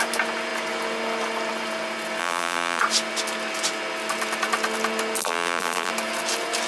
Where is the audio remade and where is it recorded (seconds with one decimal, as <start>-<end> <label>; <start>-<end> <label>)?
0.0-2.2 recorded; 2.2-2.8 remade; 2.8-5.2 recorded; 5.2-5.9 remade; 5.9-6.7 recorded